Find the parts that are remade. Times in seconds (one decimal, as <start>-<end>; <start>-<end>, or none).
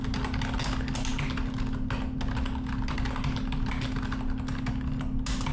none